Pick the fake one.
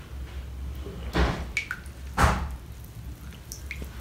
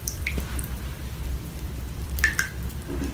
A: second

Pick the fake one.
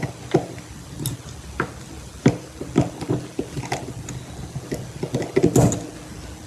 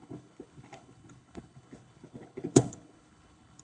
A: second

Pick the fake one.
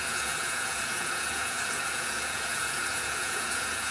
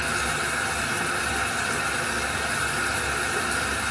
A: first